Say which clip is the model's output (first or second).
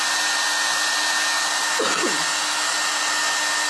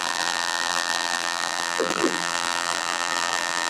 second